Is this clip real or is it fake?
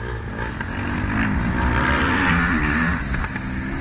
real